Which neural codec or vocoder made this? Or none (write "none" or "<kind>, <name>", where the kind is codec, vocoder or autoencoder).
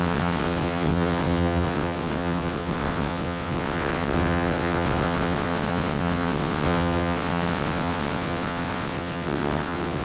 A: vocoder, WaveNeXt